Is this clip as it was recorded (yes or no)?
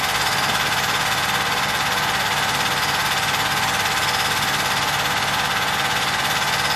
no